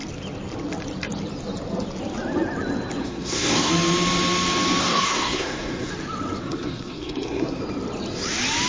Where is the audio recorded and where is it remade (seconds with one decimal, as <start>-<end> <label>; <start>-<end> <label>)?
0.0-3.0 recorded; 3.0-3.7 remade; 3.7-4.8 recorded; 4.8-5.9 remade; 5.9-6.4 recorded; 6.4-7.6 remade; 7.6-8.7 recorded

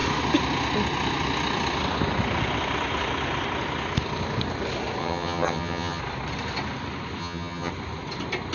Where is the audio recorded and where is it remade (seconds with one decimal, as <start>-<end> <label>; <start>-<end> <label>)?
0.0-5.0 recorded; 5.0-6.0 remade; 6.0-7.2 recorded; 7.2-7.7 remade; 7.7-8.5 recorded

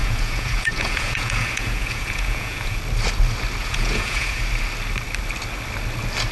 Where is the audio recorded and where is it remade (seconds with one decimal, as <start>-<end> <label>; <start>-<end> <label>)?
0.0-2.8 remade; 2.8-3.6 recorded; 3.6-4.4 remade; 4.4-6.3 recorded

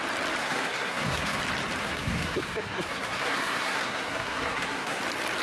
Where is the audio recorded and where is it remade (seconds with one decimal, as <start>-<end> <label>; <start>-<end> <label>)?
0.0-0.4 recorded; 0.4-1.4 remade; 1.4-1.8 recorded; 1.8-5.0 remade; 5.0-5.4 recorded

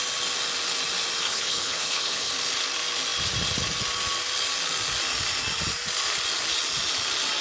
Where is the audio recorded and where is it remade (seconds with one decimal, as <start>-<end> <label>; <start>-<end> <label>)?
0.0-1.2 recorded; 1.2-2.3 remade; 2.3-7.4 recorded

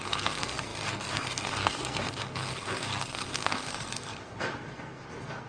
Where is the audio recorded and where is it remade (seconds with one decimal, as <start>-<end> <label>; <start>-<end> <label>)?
0.0-5.5 remade

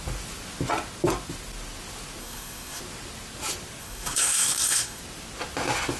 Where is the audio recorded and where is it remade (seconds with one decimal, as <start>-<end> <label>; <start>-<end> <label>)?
0.0-2.2 recorded; 2.2-2.8 remade; 2.8-3.8 recorded; 3.8-5.0 remade; 5.0-6.0 recorded